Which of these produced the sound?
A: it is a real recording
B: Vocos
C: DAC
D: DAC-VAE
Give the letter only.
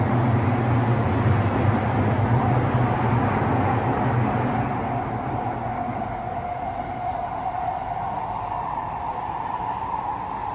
A